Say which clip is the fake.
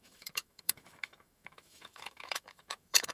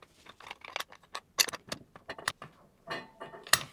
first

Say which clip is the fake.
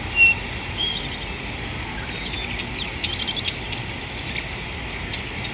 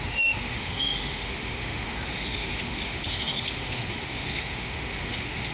second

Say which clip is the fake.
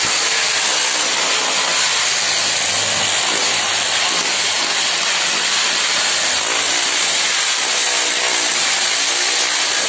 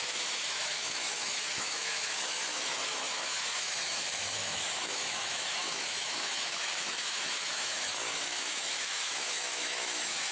second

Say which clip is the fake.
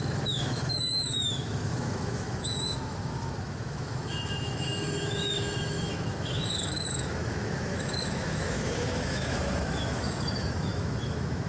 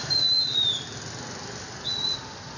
first